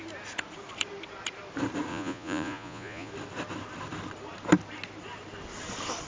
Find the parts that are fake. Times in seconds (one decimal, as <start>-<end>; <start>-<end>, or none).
1.9-3.1